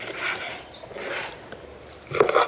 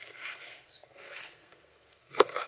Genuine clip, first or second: first